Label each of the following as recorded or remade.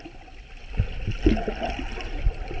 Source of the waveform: recorded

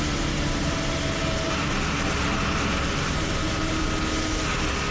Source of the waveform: recorded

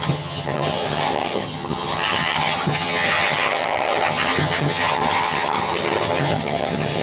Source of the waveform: remade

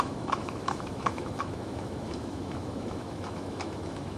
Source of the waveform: remade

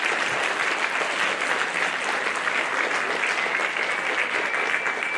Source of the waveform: recorded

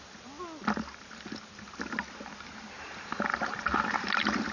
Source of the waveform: recorded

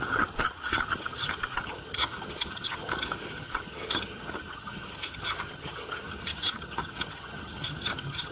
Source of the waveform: remade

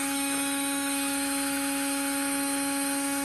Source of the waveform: remade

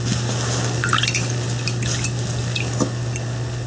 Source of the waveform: recorded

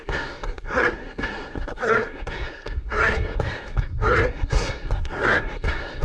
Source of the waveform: remade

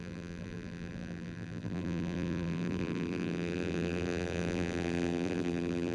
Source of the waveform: remade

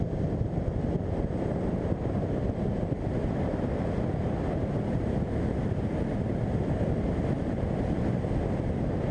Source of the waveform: remade